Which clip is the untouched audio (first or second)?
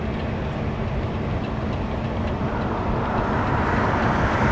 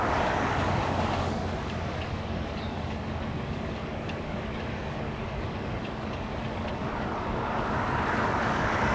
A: first